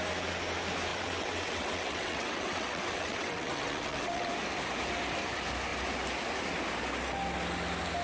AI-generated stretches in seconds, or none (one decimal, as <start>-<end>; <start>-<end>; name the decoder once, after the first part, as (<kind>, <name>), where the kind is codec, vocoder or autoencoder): 0.9-4.3 (vocoder, WaveNeXt)